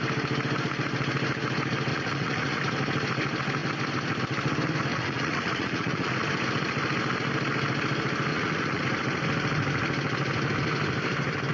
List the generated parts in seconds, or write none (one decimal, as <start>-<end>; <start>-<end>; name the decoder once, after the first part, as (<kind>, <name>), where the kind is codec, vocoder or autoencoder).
1.9-2.6 (vocoder, Vocos); 4.9-6.1; 8.3-8.8